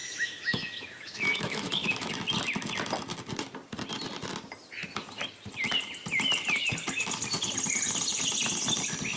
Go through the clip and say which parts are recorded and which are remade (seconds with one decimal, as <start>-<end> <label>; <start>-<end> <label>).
0.0-2.1 remade; 2.1-9.2 recorded